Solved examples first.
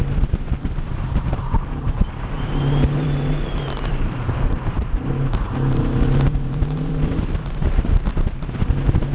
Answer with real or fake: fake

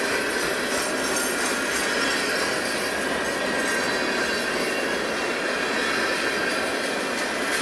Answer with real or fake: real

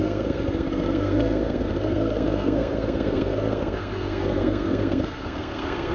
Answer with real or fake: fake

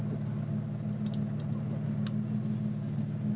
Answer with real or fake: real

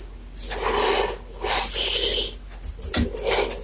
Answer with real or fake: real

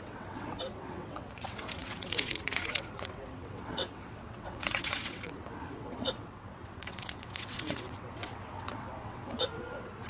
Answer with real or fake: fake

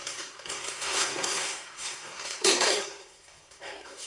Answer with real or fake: fake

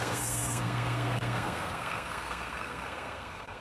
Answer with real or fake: fake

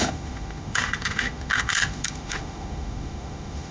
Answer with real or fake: fake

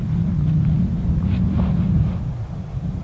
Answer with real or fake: real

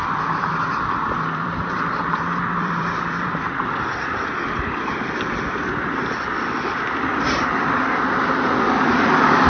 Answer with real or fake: fake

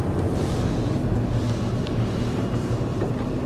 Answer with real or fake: real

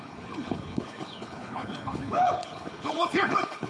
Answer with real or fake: fake